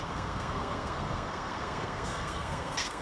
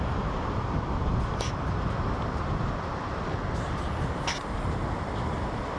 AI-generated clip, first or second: first